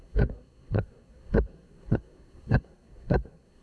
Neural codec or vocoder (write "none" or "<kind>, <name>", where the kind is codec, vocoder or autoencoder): codec, SNAC